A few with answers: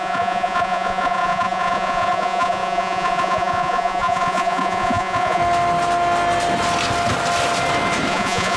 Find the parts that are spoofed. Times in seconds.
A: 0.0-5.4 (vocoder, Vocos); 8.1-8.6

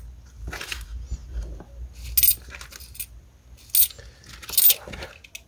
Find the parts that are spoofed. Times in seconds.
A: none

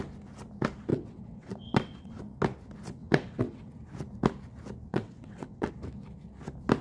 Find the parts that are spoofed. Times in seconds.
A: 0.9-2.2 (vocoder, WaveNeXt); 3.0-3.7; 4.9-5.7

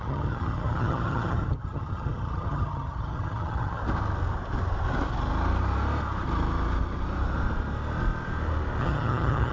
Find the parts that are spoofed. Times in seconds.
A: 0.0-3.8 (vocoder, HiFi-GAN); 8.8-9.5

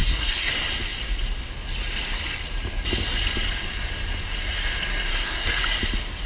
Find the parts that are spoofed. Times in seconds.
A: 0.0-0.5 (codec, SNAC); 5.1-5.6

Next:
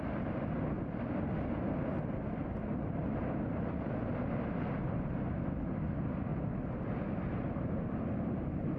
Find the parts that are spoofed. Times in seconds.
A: none